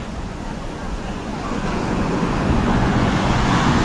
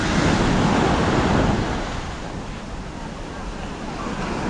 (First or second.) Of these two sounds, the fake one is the first